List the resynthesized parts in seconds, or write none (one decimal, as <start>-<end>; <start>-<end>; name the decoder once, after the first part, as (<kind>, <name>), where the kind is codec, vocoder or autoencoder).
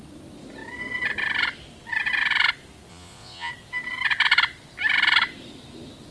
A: 2.9-3.5 (vocoder, Vocos)